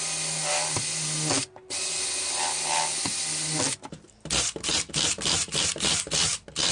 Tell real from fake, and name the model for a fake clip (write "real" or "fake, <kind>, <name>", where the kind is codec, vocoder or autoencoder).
real